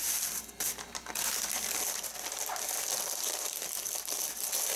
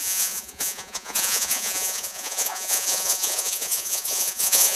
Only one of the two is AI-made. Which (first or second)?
second